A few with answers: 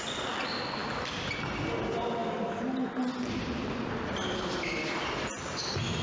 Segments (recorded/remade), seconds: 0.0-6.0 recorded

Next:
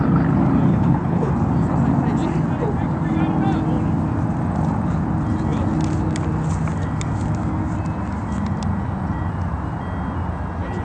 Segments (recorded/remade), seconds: 0.0-0.7 recorded; 0.7-1.3 remade; 1.3-10.8 recorded

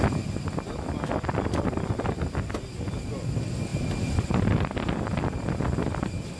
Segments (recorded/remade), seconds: 0.0-6.4 recorded

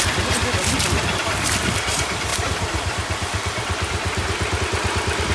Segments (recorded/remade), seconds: 0.0-2.3 recorded; 2.3-4.6 remade; 4.6-5.3 recorded

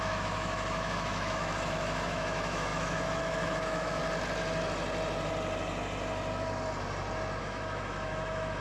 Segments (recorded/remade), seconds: 0.0-4.0 remade; 4.0-7.4 recorded; 7.4-8.6 remade

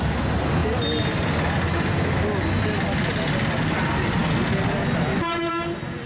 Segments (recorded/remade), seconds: 0.0-6.1 recorded